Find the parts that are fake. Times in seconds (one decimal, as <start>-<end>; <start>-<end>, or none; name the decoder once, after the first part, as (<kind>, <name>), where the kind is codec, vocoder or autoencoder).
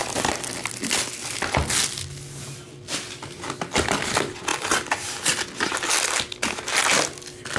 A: none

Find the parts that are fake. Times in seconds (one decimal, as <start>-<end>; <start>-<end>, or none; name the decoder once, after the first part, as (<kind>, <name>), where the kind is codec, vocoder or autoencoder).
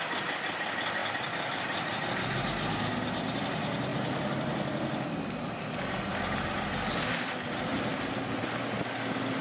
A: none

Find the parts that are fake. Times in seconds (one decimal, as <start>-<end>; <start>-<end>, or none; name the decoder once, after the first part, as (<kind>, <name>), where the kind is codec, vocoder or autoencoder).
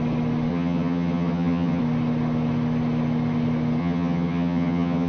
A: 0.5-1.8 (vocoder, HiFi-GAN); 3.8-5.1